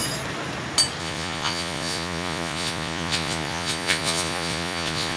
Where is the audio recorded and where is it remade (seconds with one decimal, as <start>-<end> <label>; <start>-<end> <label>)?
0.0-1.0 recorded; 1.0-5.2 remade